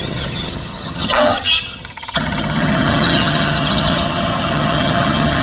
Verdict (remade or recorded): remade